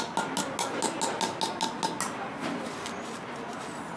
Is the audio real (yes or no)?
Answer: yes